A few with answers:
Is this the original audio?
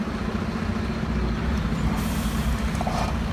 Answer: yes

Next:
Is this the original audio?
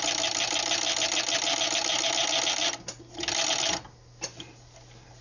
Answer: yes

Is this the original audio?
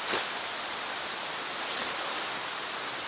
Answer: yes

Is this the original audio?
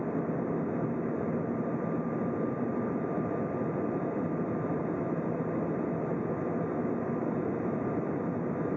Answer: yes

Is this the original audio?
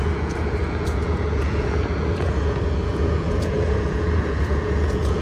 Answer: no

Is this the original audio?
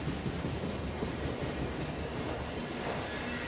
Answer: yes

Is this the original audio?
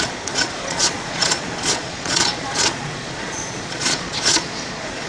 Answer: no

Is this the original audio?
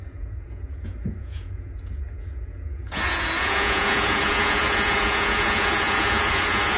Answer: no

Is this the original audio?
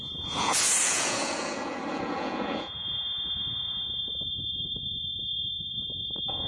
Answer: no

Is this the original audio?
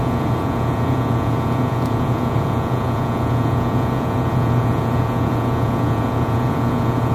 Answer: no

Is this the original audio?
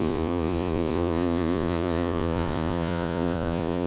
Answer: no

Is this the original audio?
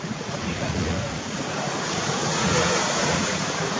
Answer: no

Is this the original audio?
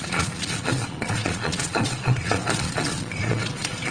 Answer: no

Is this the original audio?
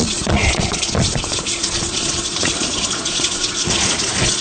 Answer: no